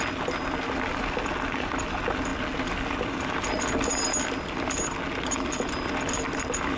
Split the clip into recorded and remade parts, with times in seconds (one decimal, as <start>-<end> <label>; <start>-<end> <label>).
0.0-6.8 recorded